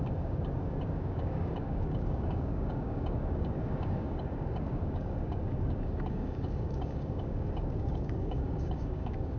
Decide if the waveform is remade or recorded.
remade